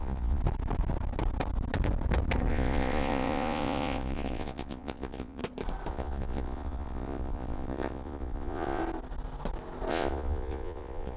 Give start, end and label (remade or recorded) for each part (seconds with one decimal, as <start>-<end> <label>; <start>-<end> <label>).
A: 0.0-0.4 remade; 0.4-2.5 recorded; 2.5-5.4 remade; 5.4-5.9 recorded; 5.9-8.8 remade; 8.8-9.9 recorded; 9.9-11.2 remade

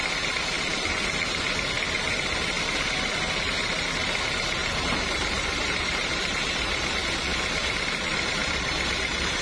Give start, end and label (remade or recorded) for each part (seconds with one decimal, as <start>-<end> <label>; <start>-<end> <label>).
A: 0.0-4.6 recorded; 4.6-7.1 remade; 7.1-8.1 recorded; 8.1-9.4 remade

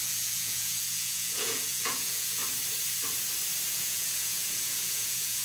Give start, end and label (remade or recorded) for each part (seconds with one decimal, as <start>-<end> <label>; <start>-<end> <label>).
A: 0.0-2.4 remade; 2.4-3.7 recorded; 3.7-5.4 remade

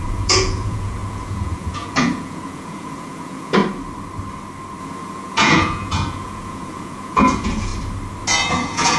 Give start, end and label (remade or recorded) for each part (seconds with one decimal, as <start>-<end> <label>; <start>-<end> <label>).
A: 0.0-3.6 remade; 3.6-4.8 recorded; 4.8-7.7 remade; 7.7-8.5 recorded; 8.5-9.0 remade

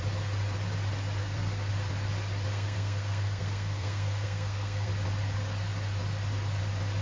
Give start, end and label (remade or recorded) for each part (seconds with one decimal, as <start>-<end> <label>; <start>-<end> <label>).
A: 0.0-1.2 recorded; 1.2-1.7 remade; 1.7-2.5 recorded; 2.5-4.9 remade; 4.9-7.0 recorded

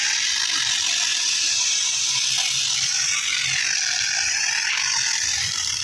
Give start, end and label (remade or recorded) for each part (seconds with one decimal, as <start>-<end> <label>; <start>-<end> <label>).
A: 0.0-1.1 recorded; 1.1-2.0 remade; 2.0-5.8 recorded

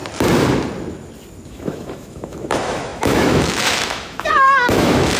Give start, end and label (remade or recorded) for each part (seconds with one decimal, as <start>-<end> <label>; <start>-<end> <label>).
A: 0.0-1.5 recorded; 1.5-5.2 remade